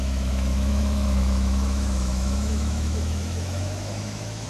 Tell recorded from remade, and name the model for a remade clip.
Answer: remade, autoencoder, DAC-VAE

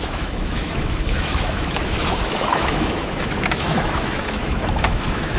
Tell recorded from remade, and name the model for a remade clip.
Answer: remade, autoencoder, DAC-VAE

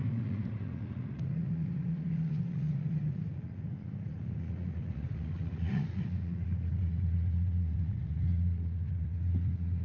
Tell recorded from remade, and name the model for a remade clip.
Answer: remade, vocoder, Vocos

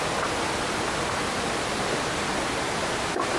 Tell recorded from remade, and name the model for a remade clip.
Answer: recorded